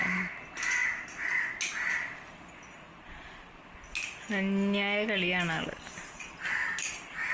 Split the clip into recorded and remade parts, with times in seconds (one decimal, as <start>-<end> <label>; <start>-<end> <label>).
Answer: 0.0-7.3 recorded